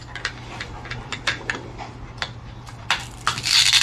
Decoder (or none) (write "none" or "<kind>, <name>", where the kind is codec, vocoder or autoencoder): none